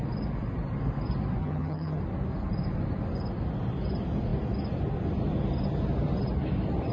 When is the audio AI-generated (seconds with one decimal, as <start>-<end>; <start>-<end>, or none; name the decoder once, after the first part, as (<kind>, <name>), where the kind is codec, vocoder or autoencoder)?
1.4-2.0 (vocoder, HiFi-GAN)